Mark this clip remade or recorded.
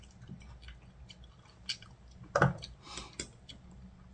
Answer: recorded